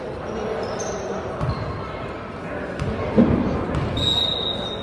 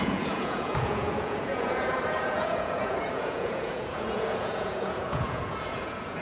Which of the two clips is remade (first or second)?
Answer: second